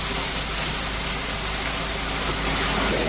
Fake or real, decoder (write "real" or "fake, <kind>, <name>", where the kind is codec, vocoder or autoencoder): real